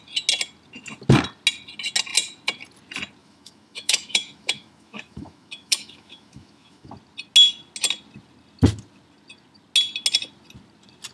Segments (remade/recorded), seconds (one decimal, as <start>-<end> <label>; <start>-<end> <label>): 0.0-3.2 recorded; 3.2-6.9 remade; 6.9-11.1 recorded